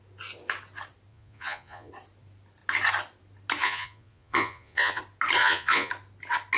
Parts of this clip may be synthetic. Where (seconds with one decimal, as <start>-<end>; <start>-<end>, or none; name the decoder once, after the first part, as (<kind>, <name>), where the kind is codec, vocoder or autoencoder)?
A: 1.1-1.9 (vocoder, Vocos); 3.6-5.0; 5.4-5.9